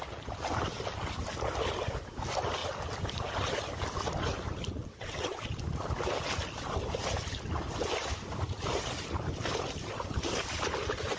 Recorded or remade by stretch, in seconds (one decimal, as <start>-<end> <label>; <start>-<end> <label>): 0.0-4.8 recorded; 4.8-5.4 remade; 5.4-11.2 recorded